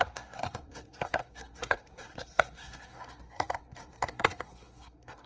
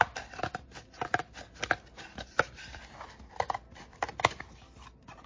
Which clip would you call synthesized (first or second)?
first